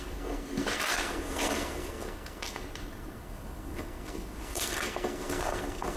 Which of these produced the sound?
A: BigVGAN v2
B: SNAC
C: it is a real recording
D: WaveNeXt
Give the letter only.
B